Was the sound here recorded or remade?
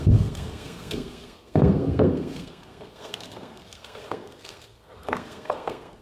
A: remade